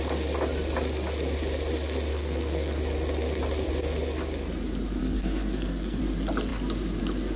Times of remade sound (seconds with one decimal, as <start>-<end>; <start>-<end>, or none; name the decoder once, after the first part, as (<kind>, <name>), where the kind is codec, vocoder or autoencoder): 2.1-2.8 (codec, SNAC); 5.0-6.0